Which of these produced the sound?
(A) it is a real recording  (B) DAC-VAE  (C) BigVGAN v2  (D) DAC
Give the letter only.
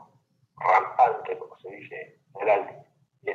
C